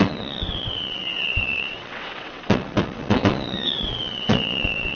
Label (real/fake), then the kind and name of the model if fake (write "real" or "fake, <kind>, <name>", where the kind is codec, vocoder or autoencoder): fake, vocoder, WaveNeXt